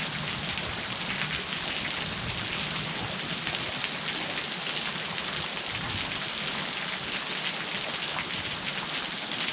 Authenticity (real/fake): real